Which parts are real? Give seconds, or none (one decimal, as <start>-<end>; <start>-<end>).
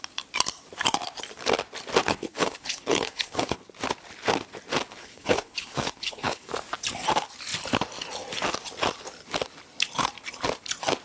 0.0-2.0; 3.6-5.0; 6.5-11.0